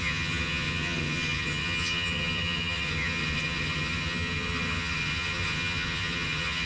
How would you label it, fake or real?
fake